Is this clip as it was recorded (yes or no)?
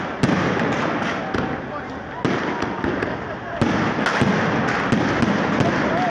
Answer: yes